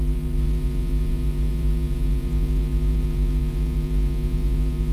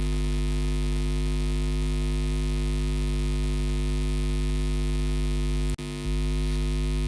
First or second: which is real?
second